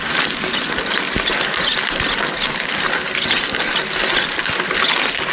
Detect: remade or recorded recorded